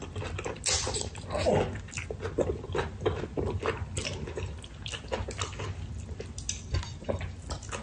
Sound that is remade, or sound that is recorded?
recorded